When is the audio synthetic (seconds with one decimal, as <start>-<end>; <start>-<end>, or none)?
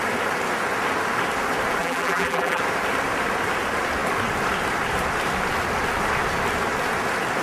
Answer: 1.8-2.6